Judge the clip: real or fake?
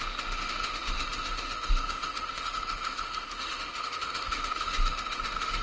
fake